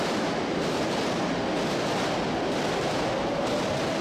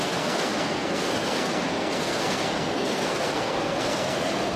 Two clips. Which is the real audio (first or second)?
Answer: first